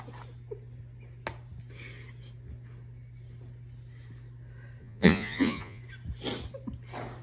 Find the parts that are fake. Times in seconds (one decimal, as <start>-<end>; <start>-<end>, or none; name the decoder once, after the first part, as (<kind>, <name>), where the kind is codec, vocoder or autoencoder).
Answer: 4.8-5.8 (vocoder, Vocos)